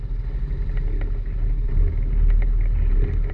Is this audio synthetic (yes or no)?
no